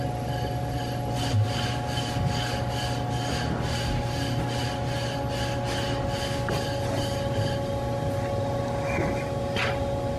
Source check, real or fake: real